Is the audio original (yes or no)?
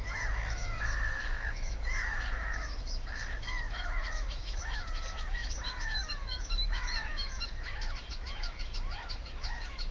no